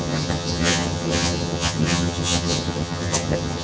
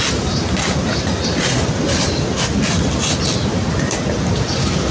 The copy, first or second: first